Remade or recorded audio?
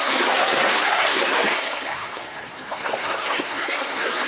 remade